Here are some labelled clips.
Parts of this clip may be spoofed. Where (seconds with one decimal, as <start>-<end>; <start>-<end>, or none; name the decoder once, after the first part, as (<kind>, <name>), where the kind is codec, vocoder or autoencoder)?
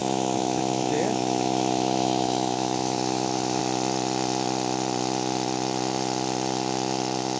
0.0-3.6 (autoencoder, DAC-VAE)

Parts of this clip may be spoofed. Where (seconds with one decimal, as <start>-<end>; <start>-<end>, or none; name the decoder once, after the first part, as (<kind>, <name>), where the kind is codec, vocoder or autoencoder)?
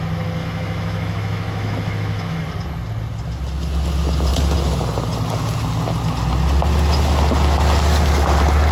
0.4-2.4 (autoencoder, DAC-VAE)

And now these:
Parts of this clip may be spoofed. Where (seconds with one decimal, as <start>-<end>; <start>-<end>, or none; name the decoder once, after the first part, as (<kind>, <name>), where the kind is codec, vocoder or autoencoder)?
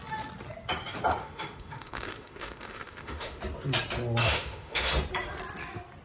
1.2-3.4 (autoencoder, DAC-VAE); 4.2-4.9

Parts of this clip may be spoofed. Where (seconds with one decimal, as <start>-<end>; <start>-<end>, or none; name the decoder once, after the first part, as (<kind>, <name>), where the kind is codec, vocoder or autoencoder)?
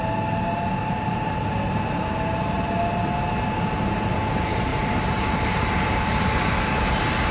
none